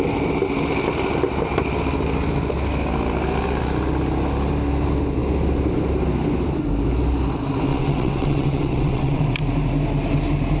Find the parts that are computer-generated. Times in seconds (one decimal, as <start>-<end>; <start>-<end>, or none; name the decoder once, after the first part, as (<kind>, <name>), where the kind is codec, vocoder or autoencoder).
7.7-9.2 (vocoder, WaveNeXt)